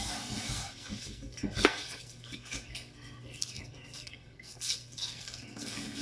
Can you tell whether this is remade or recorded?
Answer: remade